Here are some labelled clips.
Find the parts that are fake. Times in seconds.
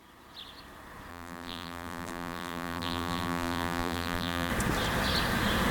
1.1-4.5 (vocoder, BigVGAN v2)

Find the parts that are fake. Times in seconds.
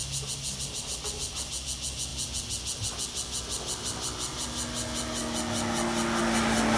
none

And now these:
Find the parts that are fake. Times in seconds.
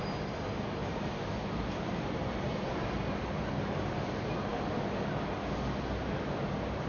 0.8-3.9 (vocoder, BigVGAN v2)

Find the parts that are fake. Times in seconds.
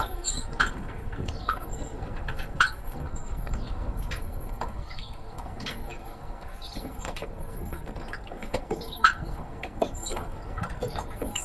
0.0-11.4 (codec, SNAC)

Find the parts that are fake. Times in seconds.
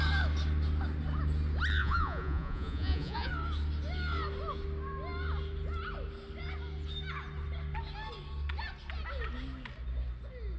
1.8-3.3 (vocoder, Vocos)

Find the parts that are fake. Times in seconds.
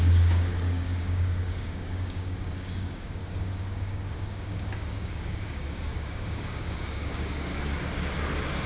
0.0-7.5 (codec, DAC)